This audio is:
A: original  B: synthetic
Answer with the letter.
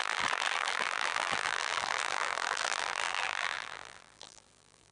B